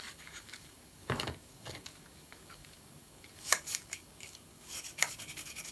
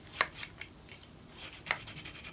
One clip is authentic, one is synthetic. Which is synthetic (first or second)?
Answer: first